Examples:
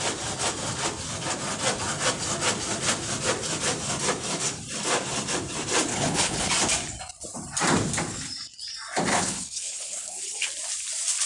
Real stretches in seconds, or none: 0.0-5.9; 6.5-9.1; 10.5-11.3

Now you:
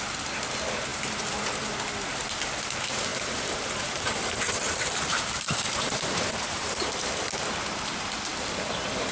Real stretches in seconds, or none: 0.0-0.9; 1.5-3.1; 6.9-9.1

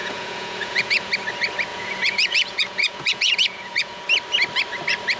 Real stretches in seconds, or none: 1.1-1.7; 4.0-5.2

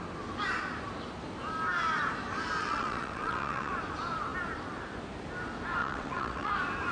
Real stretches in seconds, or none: 0.0-2.6; 3.7-5.8; 6.5-6.9

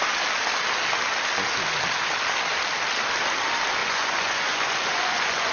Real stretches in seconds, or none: 0.0-3.8